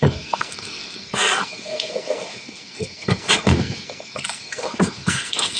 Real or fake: fake